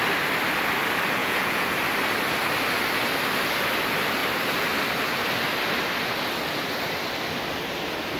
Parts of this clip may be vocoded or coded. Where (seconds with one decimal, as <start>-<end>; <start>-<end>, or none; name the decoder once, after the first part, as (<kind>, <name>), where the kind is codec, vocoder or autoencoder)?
1.2-1.7 (vocoder, Vocos)